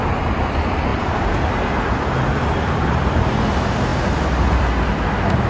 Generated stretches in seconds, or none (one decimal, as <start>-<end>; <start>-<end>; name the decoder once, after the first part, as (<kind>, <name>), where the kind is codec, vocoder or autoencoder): 0.9-3.4 (vocoder, BigVGAN v2)